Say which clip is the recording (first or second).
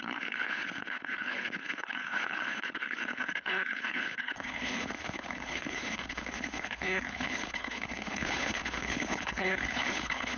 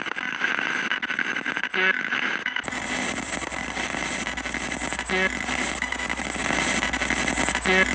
second